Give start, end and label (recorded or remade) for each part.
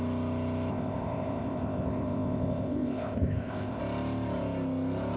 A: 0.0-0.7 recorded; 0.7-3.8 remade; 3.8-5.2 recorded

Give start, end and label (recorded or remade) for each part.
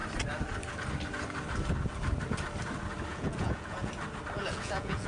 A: 0.0-3.1 recorded; 3.1-3.9 remade; 3.9-4.4 recorded; 4.4-5.1 remade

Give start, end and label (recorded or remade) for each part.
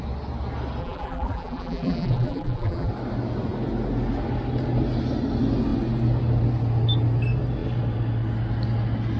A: 0.0-0.8 recorded; 0.8-2.9 remade; 2.9-9.2 recorded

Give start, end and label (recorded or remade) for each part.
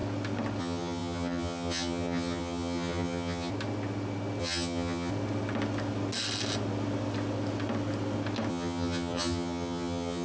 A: 0.0-0.6 recorded; 0.6-3.5 remade; 3.5-4.4 recorded; 4.4-5.1 remade; 5.1-8.5 recorded; 8.5-10.2 remade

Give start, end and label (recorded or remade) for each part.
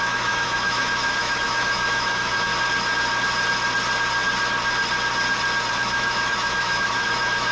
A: 0.0-2.5 remade; 2.5-5.7 recorded; 5.7-7.5 remade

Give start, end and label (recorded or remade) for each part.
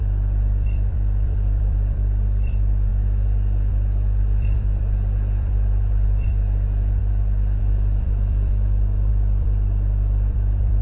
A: 0.0-2.9 remade; 2.9-3.7 recorded; 3.7-7.0 remade; 7.0-7.6 recorded; 7.6-8.5 remade; 8.5-9.1 recorded; 9.1-10.8 remade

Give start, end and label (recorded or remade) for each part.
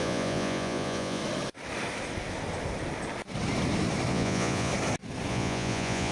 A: 0.0-1.2 remade; 1.2-4.1 recorded; 4.1-4.7 remade; 4.7-5.3 recorded; 5.3-6.1 remade